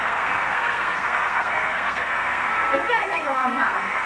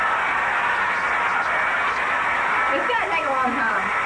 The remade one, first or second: first